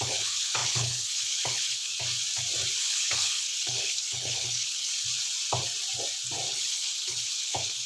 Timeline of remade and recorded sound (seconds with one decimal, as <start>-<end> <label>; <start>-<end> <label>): 0.0-1.9 remade; 1.9-2.8 recorded; 2.8-4.9 remade; 4.9-6.5 recorded; 6.5-7.9 remade